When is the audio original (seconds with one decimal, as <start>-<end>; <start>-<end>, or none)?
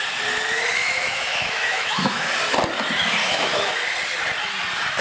0.0-0.8; 2.3-3.2; 3.7-5.0